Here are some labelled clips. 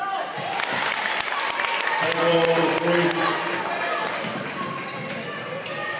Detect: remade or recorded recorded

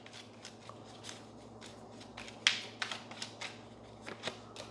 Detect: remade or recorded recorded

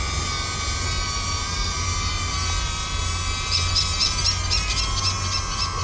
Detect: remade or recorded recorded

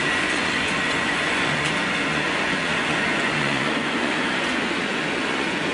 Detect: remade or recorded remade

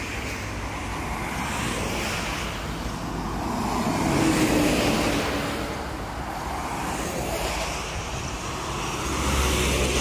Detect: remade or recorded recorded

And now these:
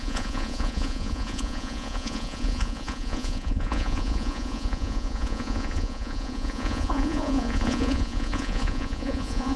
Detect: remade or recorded remade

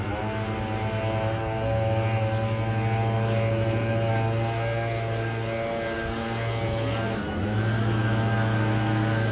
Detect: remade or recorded recorded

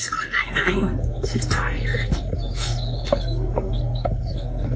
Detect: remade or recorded remade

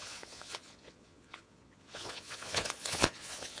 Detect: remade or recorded remade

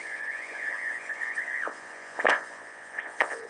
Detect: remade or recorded remade